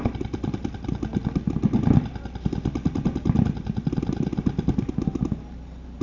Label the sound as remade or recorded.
recorded